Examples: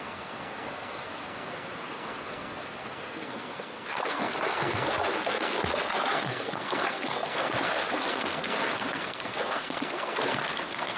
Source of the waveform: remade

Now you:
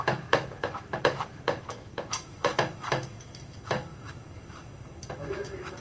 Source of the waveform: remade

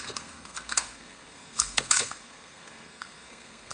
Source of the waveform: remade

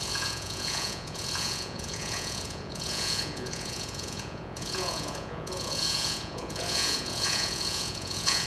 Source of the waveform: remade